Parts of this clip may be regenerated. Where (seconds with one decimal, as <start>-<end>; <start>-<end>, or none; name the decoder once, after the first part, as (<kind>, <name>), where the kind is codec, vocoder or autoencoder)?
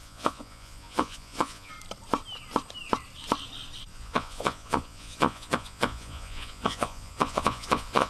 0.0-1.7 (vocoder, Vocos); 3.9-8.1